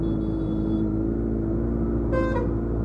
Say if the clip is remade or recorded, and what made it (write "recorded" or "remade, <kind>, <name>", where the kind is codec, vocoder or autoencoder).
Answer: recorded